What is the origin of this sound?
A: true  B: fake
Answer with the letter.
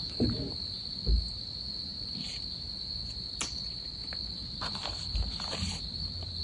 A